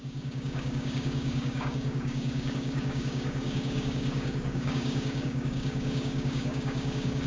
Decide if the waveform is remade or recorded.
remade